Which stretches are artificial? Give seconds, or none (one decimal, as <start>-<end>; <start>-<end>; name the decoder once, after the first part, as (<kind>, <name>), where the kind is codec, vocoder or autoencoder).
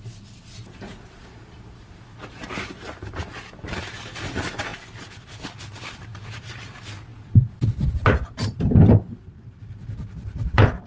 none